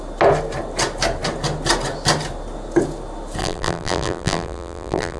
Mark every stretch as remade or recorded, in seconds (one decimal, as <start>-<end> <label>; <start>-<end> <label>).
0.0-3.4 recorded; 3.4-5.2 remade